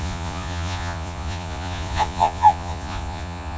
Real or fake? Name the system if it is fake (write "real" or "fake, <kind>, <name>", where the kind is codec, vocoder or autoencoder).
fake, vocoder, Vocos